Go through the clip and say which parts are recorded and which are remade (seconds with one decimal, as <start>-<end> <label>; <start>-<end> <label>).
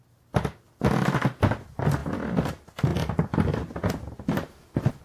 0.0-5.0 recorded